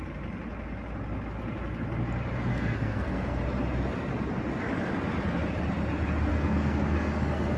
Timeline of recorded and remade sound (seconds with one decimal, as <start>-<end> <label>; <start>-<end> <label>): 0.0-2.5 recorded; 2.5-3.4 remade; 3.4-6.3 recorded; 6.3-7.6 remade